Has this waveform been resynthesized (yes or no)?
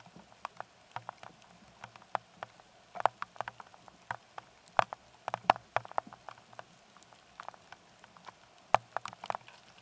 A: no